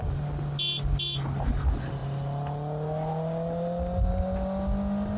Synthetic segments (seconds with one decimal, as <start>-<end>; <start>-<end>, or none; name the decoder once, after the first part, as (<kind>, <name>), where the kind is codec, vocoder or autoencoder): none